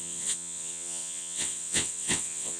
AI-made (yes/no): yes